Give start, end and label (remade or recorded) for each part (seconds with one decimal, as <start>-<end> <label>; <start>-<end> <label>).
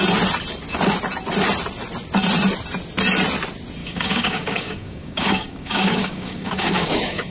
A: 0.0-3.8 recorded; 3.8-7.3 remade